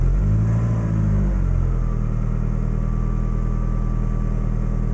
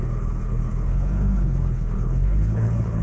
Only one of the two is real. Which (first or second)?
first